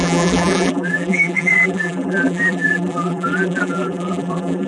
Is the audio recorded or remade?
remade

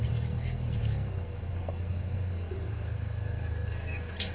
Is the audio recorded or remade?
remade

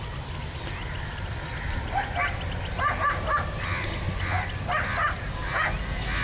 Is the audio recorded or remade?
recorded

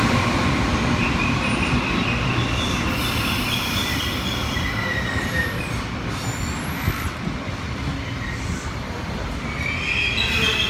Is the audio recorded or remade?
recorded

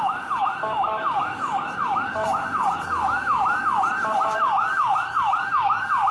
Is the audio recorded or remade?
remade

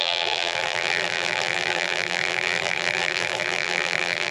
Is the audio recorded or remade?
remade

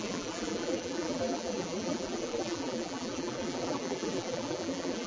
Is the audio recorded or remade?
remade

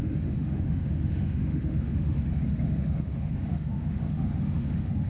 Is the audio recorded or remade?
remade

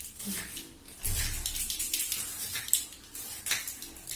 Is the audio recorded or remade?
recorded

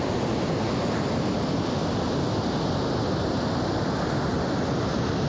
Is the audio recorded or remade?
recorded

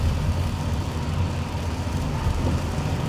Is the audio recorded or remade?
recorded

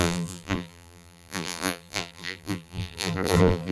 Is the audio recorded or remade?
remade